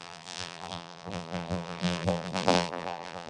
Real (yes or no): no